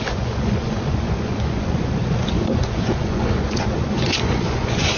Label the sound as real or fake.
fake